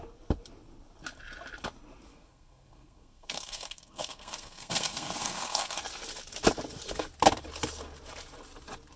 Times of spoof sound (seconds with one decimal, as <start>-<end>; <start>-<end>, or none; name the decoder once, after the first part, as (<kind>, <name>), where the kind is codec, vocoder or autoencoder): 2.1-5.8 (codec, SNAC)